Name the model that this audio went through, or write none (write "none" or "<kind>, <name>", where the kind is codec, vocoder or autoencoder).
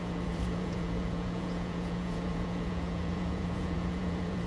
vocoder, Vocos